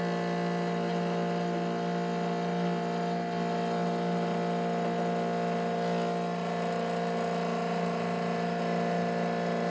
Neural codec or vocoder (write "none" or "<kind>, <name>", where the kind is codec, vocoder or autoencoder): none